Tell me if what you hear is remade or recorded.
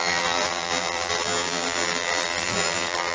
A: remade